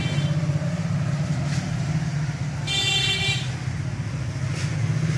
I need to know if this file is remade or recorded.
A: recorded